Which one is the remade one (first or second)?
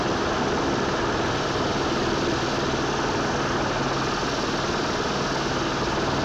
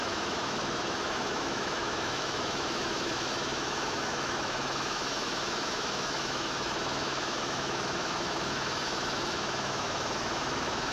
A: second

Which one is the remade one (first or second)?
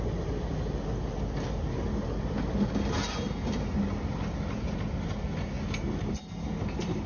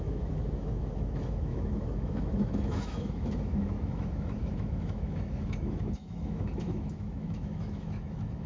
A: second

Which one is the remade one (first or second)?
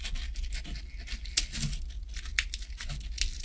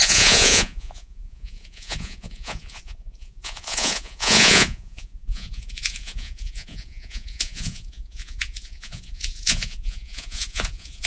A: second